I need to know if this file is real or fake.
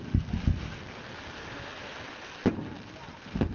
real